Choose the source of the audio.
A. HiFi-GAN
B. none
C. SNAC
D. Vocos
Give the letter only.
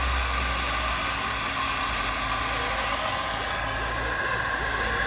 B